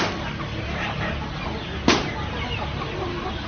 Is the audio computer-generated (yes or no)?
no